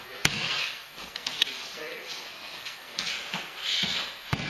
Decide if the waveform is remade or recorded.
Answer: remade